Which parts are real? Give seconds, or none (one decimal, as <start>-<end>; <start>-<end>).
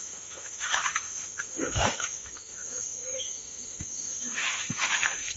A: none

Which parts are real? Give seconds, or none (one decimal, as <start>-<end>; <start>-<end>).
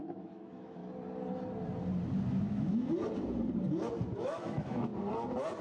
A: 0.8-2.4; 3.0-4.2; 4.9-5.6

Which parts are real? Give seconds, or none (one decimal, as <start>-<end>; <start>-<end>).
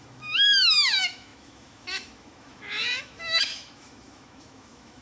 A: none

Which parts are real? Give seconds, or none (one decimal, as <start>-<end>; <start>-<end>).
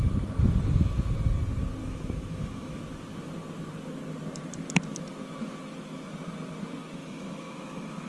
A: 0.0-1.8; 2.8-7.0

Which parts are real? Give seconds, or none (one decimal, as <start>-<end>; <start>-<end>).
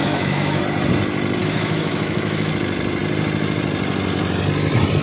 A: 0.6-1.4; 2.5-5.0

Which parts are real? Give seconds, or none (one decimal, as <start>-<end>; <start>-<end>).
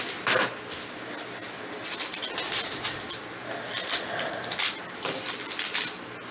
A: 0.0-6.3